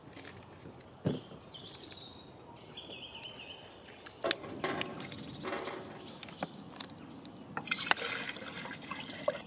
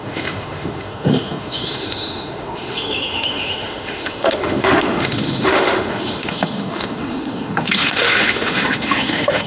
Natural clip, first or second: first